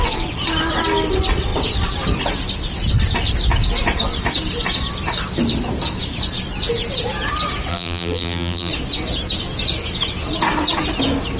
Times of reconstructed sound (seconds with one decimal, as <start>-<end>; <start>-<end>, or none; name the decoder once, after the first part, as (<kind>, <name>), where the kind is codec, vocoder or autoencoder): 7.7-8.7 (vocoder, BigVGAN v2)